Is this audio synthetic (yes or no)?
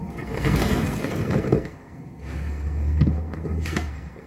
yes